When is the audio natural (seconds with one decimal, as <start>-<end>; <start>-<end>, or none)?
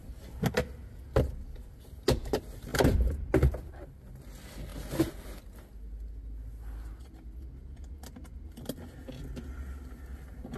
0.0-2.7; 3.3-10.6